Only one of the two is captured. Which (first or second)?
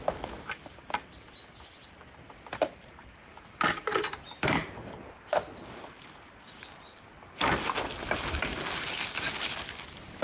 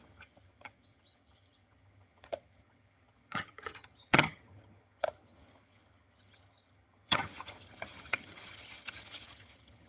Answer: first